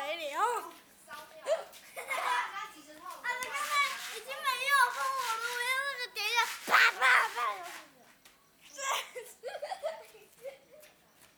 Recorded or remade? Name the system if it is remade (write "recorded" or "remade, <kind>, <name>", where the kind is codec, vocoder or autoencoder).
recorded